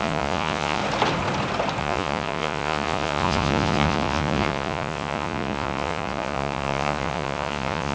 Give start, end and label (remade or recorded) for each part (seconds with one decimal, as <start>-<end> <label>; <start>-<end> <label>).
0.0-0.8 remade; 0.8-1.8 recorded; 1.8-7.9 remade